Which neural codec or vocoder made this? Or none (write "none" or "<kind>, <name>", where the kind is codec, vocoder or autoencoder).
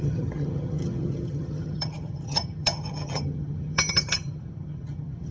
vocoder, HiFi-GAN